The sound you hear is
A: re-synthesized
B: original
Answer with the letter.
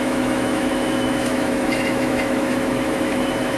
A